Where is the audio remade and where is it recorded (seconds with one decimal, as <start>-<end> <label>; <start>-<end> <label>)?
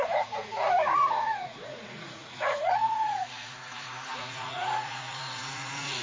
0.0-6.0 remade